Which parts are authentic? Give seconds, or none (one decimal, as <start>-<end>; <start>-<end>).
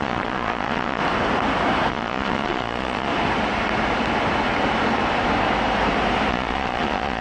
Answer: 1.0-1.9; 3.1-6.3